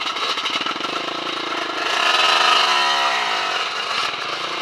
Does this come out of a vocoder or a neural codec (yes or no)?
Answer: no